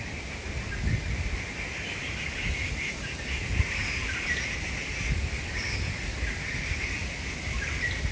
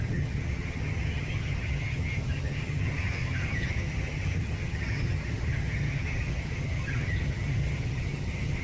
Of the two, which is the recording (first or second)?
first